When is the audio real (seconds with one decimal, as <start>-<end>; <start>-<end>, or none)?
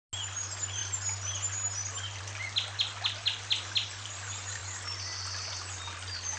0.0-6.4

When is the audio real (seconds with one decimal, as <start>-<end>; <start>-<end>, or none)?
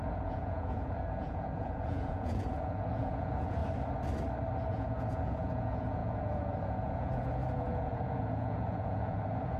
3.6-4.7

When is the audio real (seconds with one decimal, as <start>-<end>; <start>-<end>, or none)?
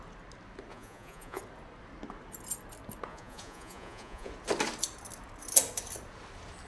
0.0-0.7; 1.4-3.1; 4.3-6.7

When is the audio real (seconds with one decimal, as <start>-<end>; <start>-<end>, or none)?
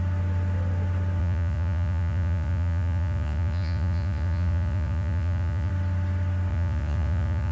0.0-1.2; 5.7-6.5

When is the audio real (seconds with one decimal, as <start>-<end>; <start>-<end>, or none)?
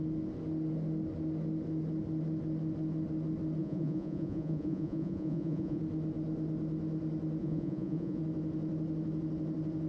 0.0-3.6; 5.8-7.4; 8.2-9.9